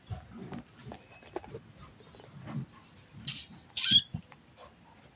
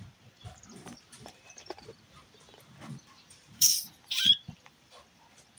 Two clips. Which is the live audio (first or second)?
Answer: first